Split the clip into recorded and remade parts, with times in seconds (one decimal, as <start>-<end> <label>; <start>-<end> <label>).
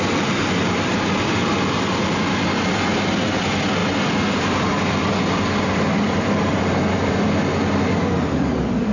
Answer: 0.0-8.9 recorded